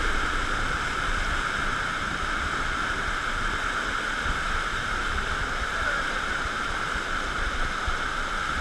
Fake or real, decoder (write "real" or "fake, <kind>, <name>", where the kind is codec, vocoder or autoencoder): real